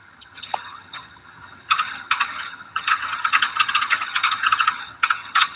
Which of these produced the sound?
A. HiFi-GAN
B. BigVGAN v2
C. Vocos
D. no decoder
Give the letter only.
A